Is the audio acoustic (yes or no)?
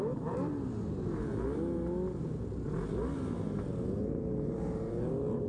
yes